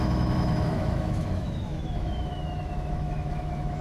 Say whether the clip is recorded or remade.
remade